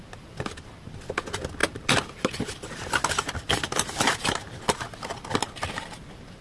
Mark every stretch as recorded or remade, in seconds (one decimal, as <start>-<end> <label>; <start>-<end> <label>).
0.0-6.4 recorded